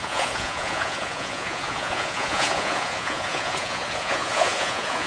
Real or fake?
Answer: fake